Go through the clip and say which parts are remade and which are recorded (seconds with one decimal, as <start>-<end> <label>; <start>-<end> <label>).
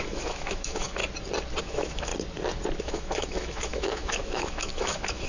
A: 0.0-1.0 remade; 1.0-1.6 recorded; 1.6-2.1 remade; 2.1-2.8 recorded; 2.8-5.3 remade